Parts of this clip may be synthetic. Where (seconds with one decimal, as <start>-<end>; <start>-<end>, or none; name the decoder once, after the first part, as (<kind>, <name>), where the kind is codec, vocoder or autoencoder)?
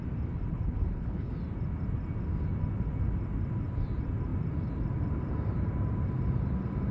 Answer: 0.5-1.3 (codec, HILCodec)